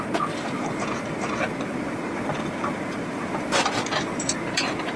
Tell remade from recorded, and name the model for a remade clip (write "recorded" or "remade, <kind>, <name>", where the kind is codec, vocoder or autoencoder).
remade, vocoder, BigVGAN v2